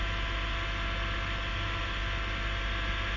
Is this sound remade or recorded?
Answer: recorded